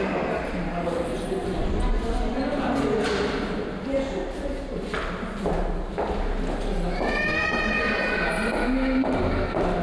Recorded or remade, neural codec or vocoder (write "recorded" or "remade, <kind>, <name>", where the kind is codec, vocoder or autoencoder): recorded